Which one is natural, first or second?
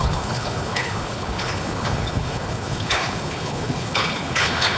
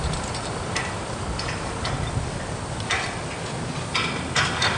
second